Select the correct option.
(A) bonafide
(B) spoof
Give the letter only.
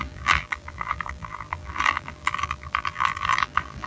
B